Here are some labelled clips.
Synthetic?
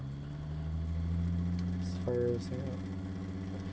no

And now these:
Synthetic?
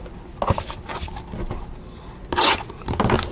no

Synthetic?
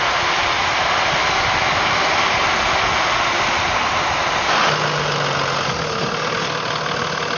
no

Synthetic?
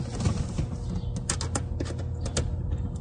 no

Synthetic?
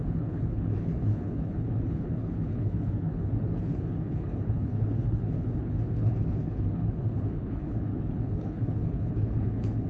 yes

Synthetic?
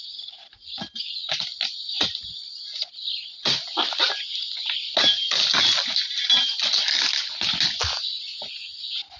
no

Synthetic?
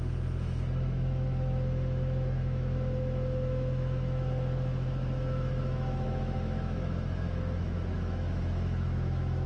yes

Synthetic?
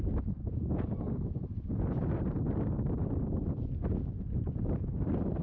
no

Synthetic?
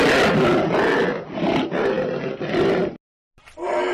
no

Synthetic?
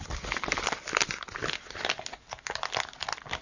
no